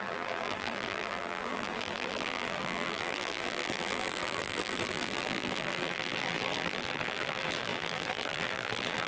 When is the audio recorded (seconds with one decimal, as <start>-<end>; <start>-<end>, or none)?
none

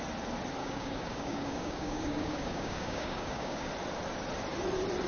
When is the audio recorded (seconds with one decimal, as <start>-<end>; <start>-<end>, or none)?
0.0-0.6; 3.7-5.1

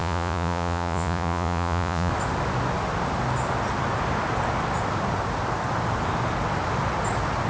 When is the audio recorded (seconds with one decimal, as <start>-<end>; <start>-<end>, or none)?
2.1-7.5

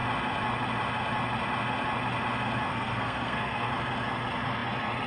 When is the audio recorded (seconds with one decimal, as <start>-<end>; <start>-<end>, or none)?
0.0-2.7; 3.7-5.1

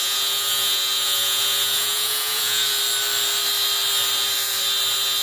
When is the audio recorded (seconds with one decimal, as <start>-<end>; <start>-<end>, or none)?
2.8-5.2